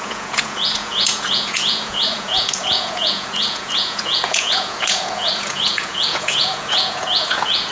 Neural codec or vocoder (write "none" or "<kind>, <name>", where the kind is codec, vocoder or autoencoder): vocoder, Vocos